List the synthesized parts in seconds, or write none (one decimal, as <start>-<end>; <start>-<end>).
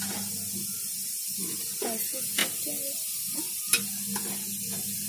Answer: none